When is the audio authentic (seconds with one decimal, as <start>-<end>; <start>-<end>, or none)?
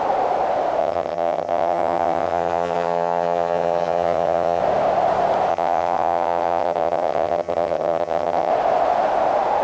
0.0-0.8; 4.6-5.5; 8.5-9.6